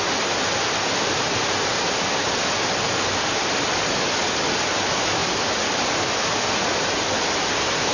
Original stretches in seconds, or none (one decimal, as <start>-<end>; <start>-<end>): 0.0-5.2; 6.5-7.9